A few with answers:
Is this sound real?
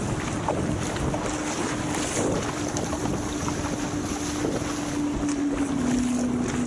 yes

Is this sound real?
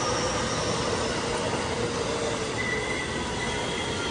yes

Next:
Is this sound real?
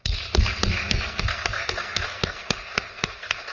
no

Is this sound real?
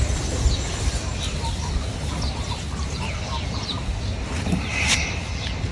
yes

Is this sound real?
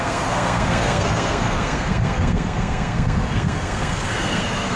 no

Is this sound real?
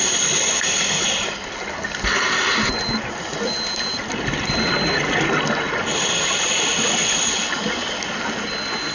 yes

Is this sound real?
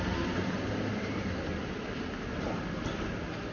yes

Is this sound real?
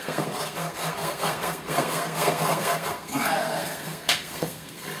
no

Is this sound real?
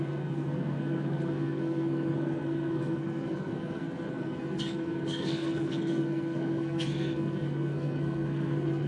no